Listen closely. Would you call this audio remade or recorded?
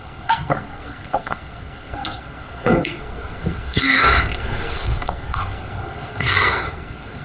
remade